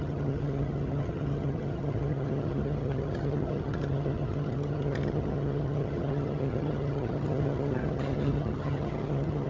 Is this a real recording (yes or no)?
no